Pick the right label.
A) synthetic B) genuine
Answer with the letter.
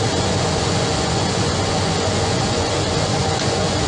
A